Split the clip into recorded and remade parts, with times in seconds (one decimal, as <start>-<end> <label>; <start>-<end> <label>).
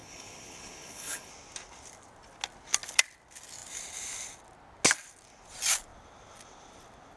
0.0-1.3 remade; 1.3-7.2 recorded